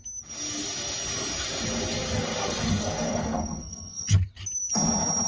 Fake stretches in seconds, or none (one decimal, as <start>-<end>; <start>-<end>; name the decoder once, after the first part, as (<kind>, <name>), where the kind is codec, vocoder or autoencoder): 2.4-4.3 (codec, SNAC)